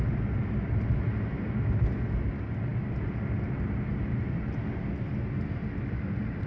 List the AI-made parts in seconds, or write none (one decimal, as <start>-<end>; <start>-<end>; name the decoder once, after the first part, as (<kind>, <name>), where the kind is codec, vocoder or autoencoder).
none